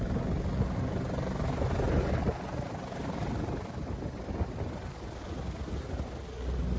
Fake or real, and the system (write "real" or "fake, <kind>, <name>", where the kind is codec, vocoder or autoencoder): real